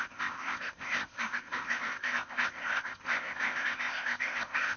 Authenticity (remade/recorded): remade